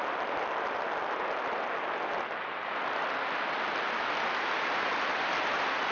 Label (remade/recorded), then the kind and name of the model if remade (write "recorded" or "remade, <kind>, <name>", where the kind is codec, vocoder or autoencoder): recorded